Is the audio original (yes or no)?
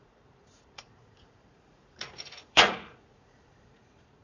no